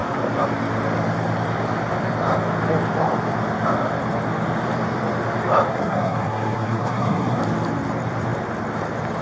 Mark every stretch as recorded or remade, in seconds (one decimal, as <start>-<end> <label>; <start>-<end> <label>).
0.0-5.7 recorded; 5.7-7.4 remade; 7.4-9.2 recorded